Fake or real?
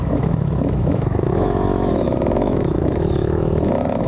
fake